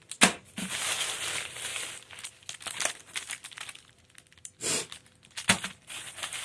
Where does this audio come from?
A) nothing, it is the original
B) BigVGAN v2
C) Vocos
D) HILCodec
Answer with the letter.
A